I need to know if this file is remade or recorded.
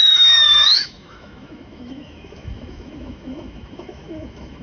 remade